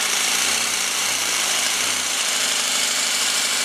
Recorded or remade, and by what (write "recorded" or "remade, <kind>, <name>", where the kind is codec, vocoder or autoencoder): remade, vocoder, BigVGAN v2